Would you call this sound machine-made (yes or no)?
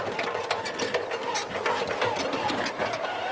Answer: no